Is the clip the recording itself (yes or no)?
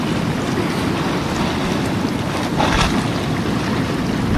yes